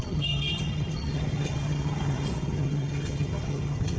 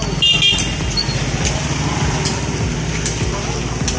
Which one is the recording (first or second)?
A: second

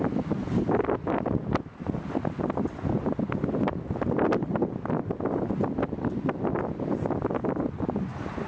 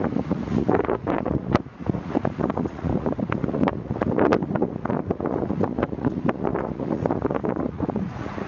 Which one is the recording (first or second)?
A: first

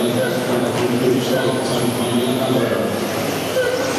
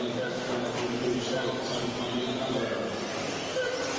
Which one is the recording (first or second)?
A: second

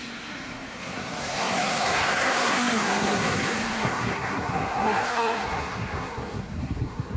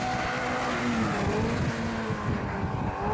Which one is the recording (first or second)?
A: second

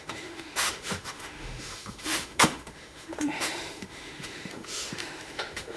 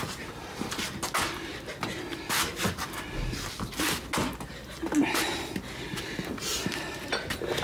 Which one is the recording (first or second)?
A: second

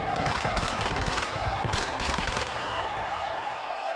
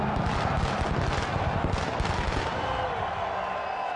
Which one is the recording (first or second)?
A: second